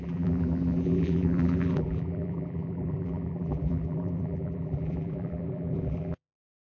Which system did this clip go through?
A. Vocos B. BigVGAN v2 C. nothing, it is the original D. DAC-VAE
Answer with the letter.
B